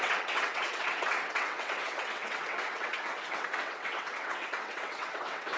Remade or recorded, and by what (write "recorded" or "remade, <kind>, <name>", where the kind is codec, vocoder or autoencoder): remade, vocoder, WaveNeXt